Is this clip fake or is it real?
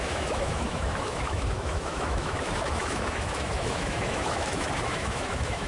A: fake